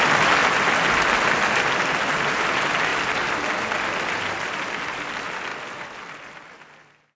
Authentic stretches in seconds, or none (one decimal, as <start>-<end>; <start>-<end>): 0.4-2.3; 2.9-3.6; 5.5-6.5